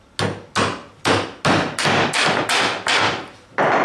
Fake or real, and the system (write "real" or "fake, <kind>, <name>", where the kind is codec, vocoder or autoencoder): real